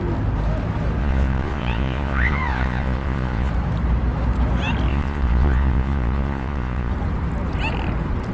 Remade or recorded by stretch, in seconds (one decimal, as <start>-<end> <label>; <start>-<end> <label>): 0.0-1.0 recorded; 1.0-3.5 remade; 3.5-4.9 recorded; 4.9-6.9 remade; 6.9-8.3 recorded